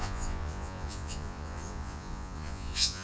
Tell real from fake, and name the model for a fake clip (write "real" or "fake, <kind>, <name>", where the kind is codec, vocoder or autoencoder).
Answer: fake, vocoder, Vocos